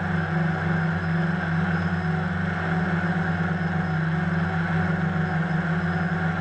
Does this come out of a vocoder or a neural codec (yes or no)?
no